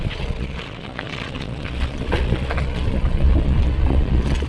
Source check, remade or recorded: remade